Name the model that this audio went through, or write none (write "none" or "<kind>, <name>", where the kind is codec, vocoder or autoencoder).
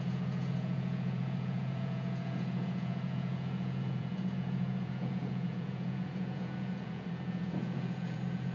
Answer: vocoder, Vocos